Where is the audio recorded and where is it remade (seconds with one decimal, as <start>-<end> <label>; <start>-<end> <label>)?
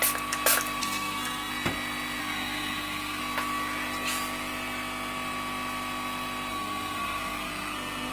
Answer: 0.0-0.8 recorded; 0.8-1.5 remade; 1.5-2.2 recorded; 2.2-3.2 remade; 3.2-6.5 recorded; 6.5-8.1 remade